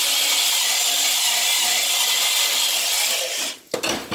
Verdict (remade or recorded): recorded